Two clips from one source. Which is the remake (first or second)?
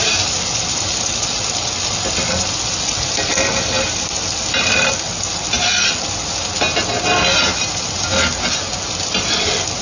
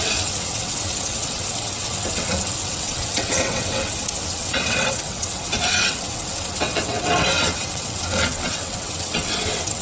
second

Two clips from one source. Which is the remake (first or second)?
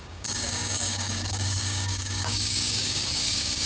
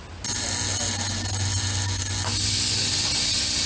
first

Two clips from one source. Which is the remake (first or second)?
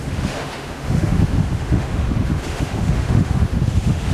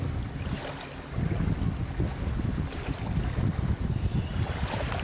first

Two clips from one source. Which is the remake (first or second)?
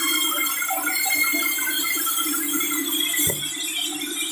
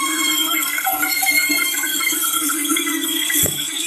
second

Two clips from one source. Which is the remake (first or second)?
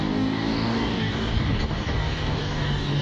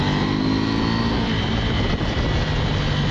first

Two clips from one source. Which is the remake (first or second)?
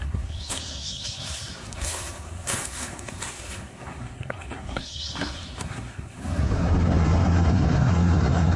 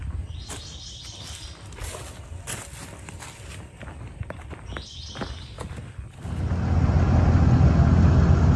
first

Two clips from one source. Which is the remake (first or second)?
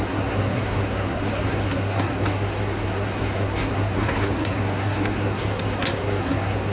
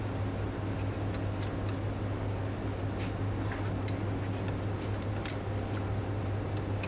first